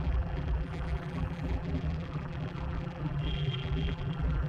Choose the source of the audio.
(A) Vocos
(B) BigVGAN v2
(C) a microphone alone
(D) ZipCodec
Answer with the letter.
B